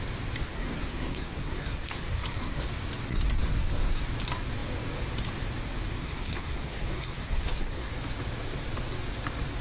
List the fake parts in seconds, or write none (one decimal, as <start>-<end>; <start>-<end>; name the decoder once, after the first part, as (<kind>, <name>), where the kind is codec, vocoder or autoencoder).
0.4-2.7 (codec, SNAC); 3.4-4.0; 6.0-7.9